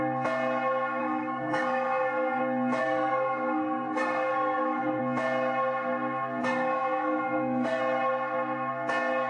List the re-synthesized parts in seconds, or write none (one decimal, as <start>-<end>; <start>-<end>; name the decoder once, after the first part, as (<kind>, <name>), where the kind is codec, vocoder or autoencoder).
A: 1.0-2.4 (codec, SNAC); 2.8-5.0; 6.4-7.8